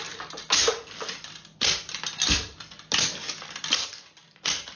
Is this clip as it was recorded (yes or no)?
yes